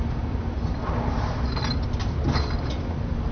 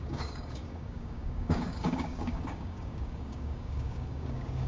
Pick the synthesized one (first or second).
second